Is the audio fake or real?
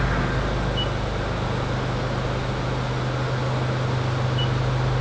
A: real